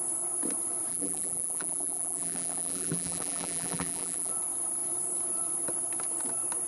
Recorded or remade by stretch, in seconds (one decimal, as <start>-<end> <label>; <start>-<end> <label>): 0.0-0.9 recorded; 0.9-4.3 remade; 4.3-6.7 recorded